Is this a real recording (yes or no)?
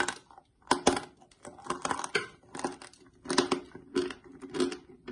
yes